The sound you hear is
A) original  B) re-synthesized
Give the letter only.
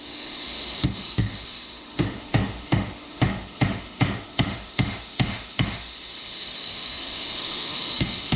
B